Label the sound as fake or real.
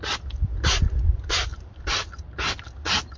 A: real